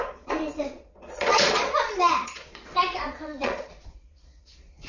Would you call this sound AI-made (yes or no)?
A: yes